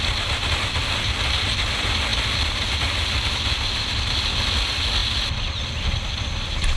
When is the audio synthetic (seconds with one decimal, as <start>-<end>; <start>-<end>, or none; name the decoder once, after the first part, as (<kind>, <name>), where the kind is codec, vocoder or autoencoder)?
none